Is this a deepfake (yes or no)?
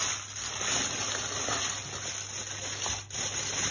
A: no